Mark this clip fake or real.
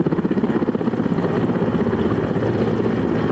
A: real